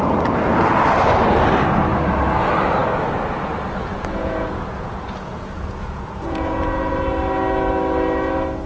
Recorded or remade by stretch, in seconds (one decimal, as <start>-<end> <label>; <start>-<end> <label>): 0.0-3.8 recorded; 3.8-6.9 remade; 6.9-8.7 recorded